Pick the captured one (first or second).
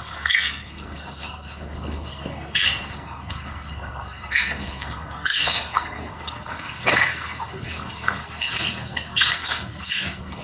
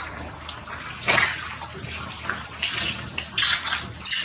second